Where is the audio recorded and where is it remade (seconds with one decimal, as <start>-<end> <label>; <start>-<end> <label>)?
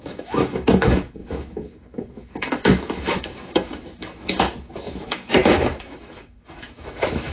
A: 0.0-7.3 remade